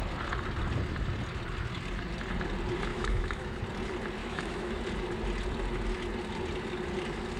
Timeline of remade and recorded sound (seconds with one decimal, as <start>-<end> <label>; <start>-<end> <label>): 0.0-2.9 recorded; 2.9-3.6 remade; 3.6-4.2 recorded; 4.2-4.8 remade; 4.8-7.4 recorded